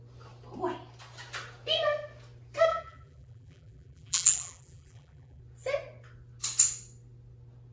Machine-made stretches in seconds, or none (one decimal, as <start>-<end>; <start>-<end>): 2.7-5.4